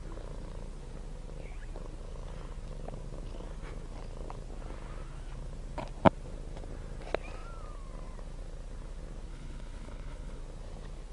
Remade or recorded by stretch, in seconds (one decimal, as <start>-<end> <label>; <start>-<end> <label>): 0.0-9.3 recorded; 9.3-10.4 remade; 10.4-11.1 recorded